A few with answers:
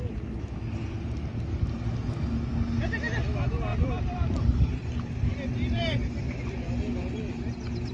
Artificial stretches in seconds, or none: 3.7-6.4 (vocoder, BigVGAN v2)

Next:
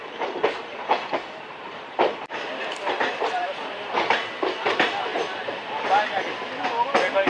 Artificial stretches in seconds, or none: 0.0-3.7 (vocoder, BigVGAN v2)

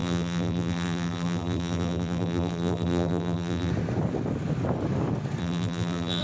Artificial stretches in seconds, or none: 0.0-3.7 (vocoder, BigVGAN v2); 5.4-6.2

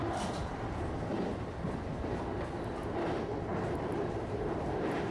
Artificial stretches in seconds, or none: 0.4-1.0 (vocoder, BigVGAN v2); 3.5-5.1

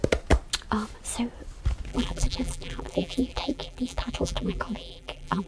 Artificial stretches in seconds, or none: 1.9-5.5 (vocoder, BigVGAN v2)

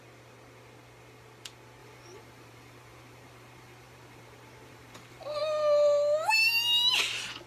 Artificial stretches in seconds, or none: 1.8-5.4 (vocoder, BigVGAN v2)

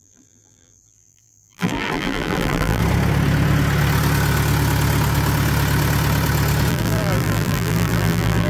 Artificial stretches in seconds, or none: 0.0-2.8 (vocoder, BigVGAN v2); 6.7-8.5